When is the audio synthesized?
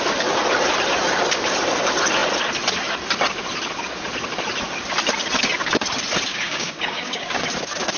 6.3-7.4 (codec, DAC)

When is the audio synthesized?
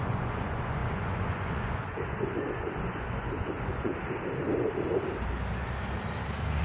0.0-3.9 (vocoder, Vocos)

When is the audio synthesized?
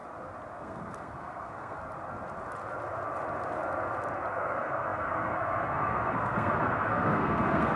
0.6-1.8 (codec, SNAC); 4.3-7.8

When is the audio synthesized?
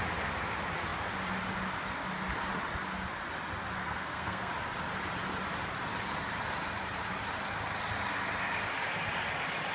3.8-4.5 (codec, SNAC)